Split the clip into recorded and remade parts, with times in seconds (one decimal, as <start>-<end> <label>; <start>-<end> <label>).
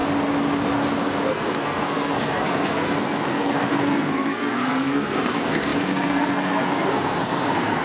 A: 0.0-1.3 recorded; 1.3-7.8 remade